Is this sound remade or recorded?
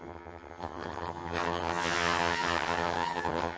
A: remade